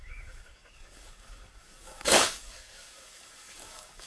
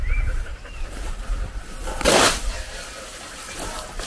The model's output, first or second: first